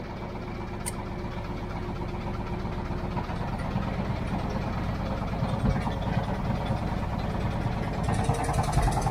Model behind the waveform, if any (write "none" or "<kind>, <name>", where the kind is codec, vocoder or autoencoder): none